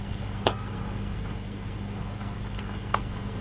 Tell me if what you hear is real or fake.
fake